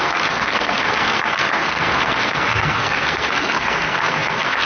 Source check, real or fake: fake